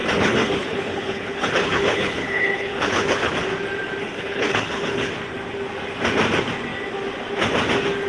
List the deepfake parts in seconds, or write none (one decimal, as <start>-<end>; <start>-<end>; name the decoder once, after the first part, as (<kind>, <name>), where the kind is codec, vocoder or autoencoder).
0.0-3.3 (codec, HILCodec); 4.0-5.1

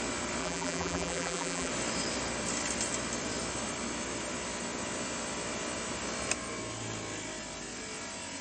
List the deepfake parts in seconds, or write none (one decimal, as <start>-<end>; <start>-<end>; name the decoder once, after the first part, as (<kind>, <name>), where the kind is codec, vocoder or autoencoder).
0.4-1.7 (vocoder, BigVGAN v2)

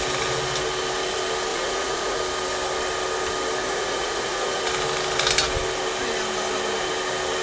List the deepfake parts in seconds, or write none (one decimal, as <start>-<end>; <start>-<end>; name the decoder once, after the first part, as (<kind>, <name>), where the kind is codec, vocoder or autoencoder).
1.5-2.2 (vocoder, Vocos); 3.6-4.6

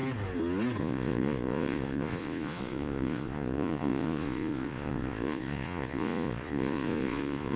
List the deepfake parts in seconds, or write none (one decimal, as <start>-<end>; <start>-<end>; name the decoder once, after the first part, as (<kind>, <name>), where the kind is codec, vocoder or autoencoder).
0.8-7.6 (vocoder, Vocos)